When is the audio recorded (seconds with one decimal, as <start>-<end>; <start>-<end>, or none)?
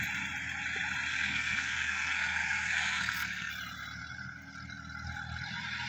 0.0-1.1; 3.5-5.9